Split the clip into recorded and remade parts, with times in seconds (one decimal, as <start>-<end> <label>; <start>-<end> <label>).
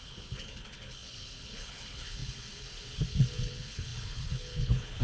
0.0-5.0 remade